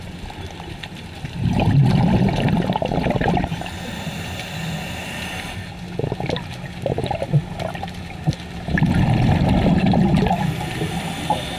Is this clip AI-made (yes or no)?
no